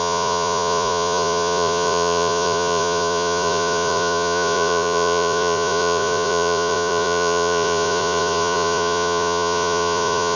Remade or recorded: remade